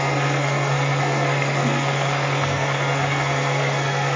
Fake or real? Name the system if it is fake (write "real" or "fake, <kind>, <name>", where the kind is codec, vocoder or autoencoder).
fake, codec, SNAC